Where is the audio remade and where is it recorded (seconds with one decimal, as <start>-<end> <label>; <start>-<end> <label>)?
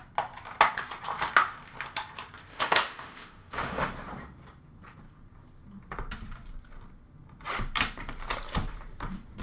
0.0-2.5 recorded; 2.5-3.8 remade; 3.8-9.4 recorded